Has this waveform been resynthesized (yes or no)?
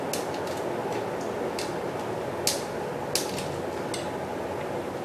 no